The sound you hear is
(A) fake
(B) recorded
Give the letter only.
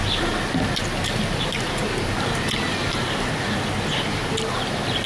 B